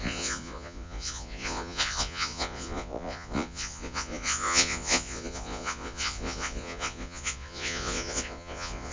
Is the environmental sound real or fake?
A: fake